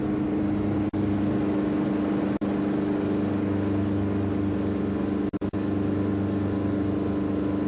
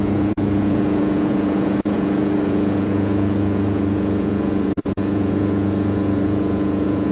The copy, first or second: second